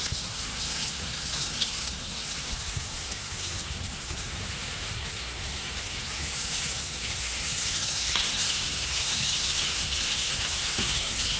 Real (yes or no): no